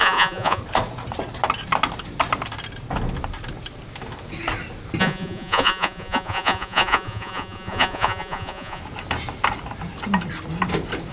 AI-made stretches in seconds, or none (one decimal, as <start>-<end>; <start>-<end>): 0.0-0.6; 5.0-8.8

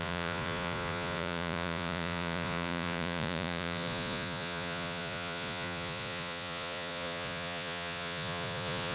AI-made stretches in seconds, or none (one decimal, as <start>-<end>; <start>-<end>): 0.0-8.9

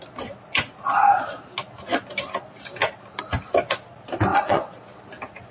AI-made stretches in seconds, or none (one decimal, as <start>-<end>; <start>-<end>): 4.3-5.0

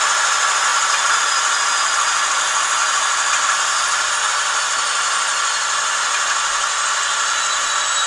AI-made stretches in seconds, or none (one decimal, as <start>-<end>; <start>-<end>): none

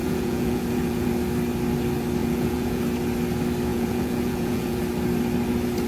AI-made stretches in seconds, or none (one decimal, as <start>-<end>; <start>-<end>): 0.0-1.1; 2.2-2.8; 3.7-4.8

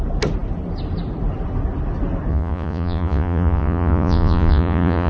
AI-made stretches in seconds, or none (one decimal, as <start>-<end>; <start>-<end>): 2.3-5.1